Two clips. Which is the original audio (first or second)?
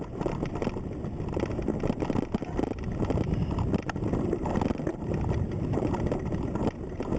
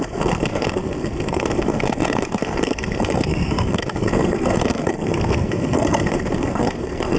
first